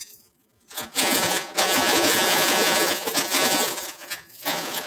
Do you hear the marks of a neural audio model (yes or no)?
yes